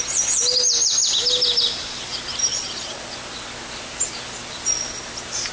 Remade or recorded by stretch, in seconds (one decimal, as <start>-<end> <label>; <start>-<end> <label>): 0.0-2.5 recorded; 2.5-3.0 remade; 3.0-5.5 recorded

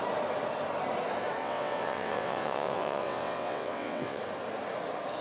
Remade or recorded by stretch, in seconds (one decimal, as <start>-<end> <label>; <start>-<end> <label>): 0.0-1.4 recorded; 1.4-4.2 remade; 4.2-5.2 recorded

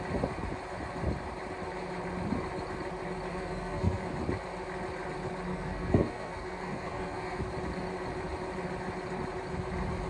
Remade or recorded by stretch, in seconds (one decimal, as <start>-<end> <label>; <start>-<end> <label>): 0.0-3.3 recorded; 3.3-4.0 remade; 4.0-5.5 recorded; 5.5-7.4 remade; 7.4-10.1 recorded

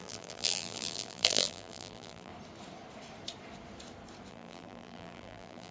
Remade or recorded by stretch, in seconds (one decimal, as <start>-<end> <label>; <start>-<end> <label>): 0.0-2.3 remade; 2.3-4.3 recorded; 4.3-5.7 remade

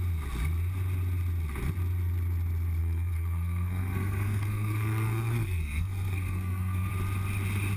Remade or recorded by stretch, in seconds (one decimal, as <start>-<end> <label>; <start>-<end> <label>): 0.0-2.8 recorded; 2.8-6.9 remade; 6.9-7.8 recorded

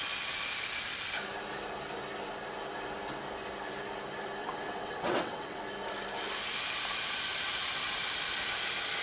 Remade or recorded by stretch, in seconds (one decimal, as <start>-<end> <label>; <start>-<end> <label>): 0.0-4.4 recorded; 4.4-5.6 remade; 5.6-9.0 recorded

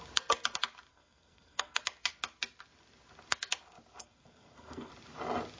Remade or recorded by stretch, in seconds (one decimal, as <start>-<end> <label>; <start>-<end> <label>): 0.0-0.9 recorded; 0.9-1.8 remade; 1.8-4.0 recorded; 4.0-4.9 remade; 4.9-5.6 recorded

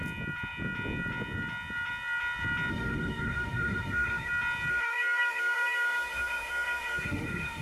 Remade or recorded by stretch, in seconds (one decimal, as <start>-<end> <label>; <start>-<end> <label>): 0.0-2.7 recorded; 2.7-4.3 remade; 4.3-4.7 recorded; 4.7-7.6 remade